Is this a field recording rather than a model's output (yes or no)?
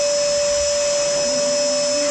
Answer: yes